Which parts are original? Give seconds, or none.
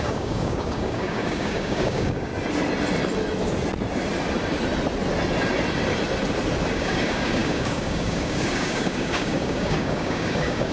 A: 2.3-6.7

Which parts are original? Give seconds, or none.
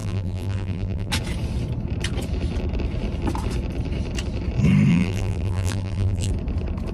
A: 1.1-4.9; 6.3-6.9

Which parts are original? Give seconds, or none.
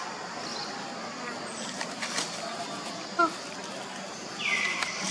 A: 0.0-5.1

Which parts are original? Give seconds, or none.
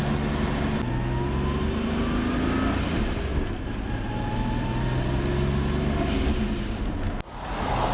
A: 0.0-7.9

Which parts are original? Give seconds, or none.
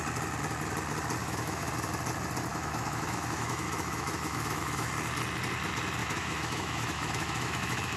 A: 0.0-1.2; 1.7-2.5; 4.9-6.0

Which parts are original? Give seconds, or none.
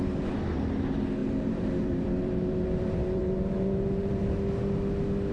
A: 0.0-1.2; 4.4-5.3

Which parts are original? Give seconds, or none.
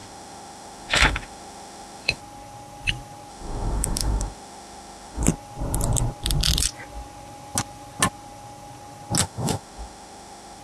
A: 2.2-3.3; 5.2-9.2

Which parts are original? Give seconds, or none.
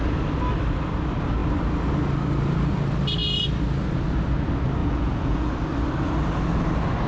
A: 0.0-4.8; 5.5-7.1